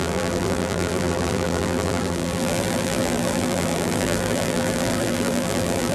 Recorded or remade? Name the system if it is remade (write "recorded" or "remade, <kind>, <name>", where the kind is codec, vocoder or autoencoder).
remade, vocoder, BigVGAN v2